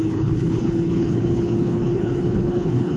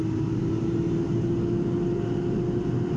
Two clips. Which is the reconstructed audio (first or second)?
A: first